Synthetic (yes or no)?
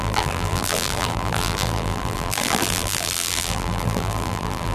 yes